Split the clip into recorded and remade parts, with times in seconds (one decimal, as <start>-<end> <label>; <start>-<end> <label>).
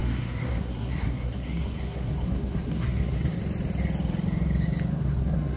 0.0-3.4 remade; 3.4-4.9 recorded; 4.9-5.6 remade